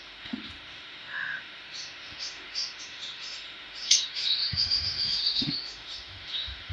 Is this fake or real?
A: fake